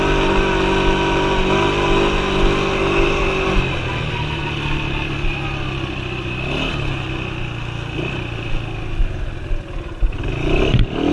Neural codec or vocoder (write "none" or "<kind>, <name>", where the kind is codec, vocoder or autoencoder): none